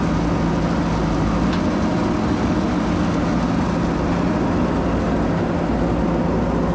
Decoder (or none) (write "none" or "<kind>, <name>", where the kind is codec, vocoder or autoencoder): none